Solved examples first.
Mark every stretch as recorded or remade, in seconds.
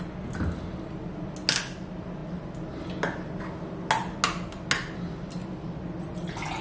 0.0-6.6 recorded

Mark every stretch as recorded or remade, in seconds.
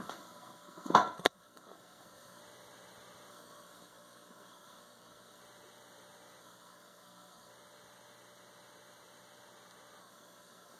0.0-2.4 remade; 2.4-3.3 recorded; 3.3-5.4 remade; 5.4-6.4 recorded; 6.4-7.5 remade; 7.5-10.0 recorded; 10.0-10.8 remade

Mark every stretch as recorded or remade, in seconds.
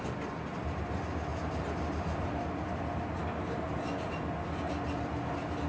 0.0-5.7 recorded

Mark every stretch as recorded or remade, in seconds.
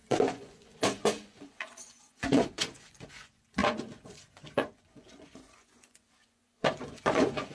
0.0-7.5 remade